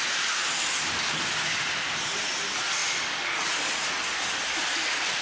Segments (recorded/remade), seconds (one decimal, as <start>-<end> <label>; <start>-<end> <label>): 0.0-5.2 recorded